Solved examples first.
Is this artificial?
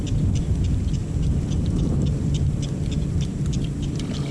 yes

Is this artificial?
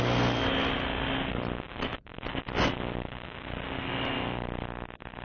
no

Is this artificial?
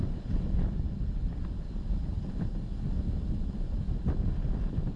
no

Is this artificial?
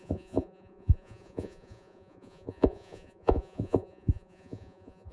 yes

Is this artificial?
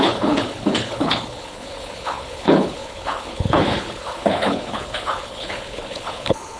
yes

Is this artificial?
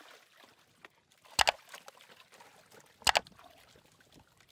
no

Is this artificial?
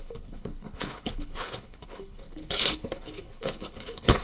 yes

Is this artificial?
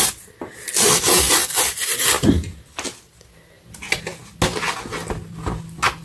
no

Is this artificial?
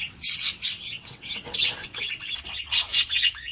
yes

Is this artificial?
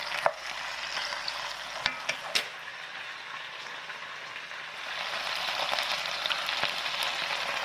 no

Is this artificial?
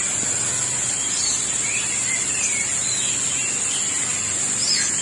no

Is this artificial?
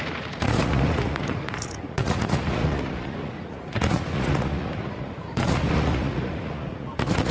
yes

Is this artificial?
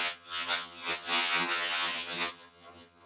yes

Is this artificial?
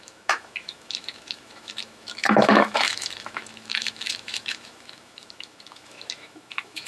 yes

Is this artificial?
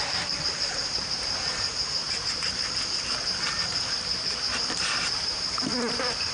yes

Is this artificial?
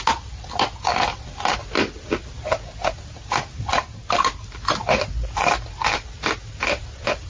no